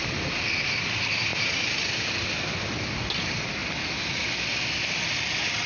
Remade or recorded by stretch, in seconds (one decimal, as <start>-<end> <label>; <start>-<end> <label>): 0.0-5.7 recorded